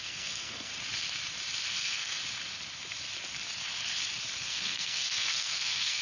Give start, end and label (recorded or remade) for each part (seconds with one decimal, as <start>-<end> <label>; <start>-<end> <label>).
0.0-0.7 remade; 0.7-1.7 recorded; 1.7-2.2 remade; 2.2-4.4 recorded; 4.4-6.0 remade